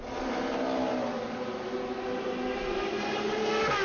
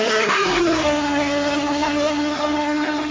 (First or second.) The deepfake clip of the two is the second